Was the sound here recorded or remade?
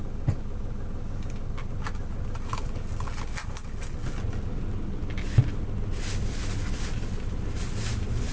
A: recorded